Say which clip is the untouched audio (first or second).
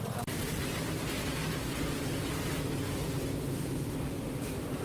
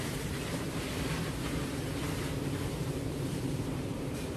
first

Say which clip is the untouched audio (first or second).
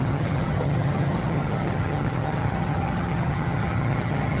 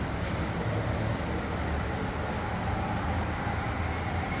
second